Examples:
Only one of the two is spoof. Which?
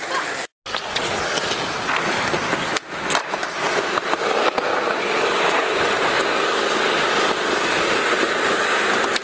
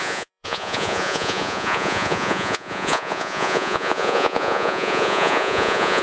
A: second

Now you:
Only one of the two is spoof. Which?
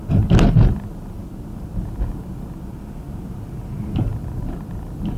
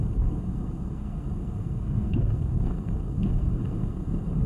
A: second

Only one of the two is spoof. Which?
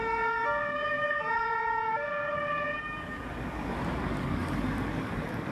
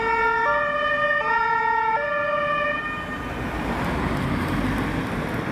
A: first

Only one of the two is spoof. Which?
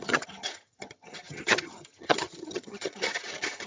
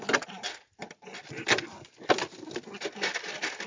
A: first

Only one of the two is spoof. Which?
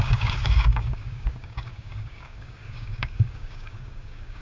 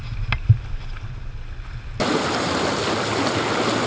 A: first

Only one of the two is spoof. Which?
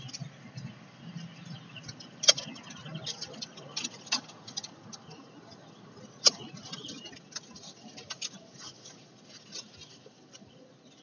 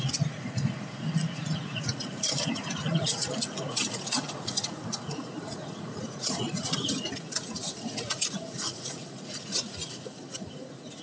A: second